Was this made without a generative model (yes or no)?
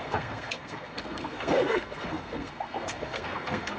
no